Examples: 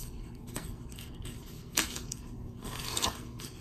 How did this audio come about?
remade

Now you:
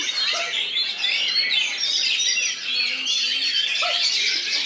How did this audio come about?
recorded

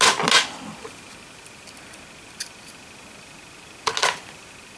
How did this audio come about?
recorded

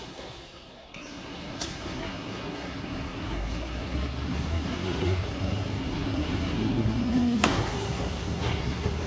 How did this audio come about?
remade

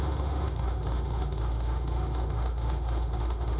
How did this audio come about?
remade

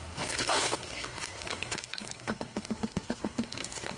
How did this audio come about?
remade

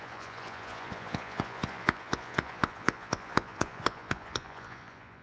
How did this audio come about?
remade